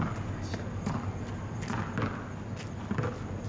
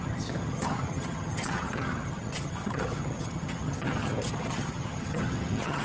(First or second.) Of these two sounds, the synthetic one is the second